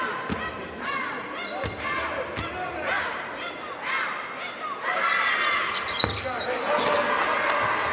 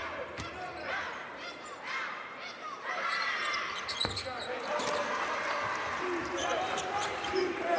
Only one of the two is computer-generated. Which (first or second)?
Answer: second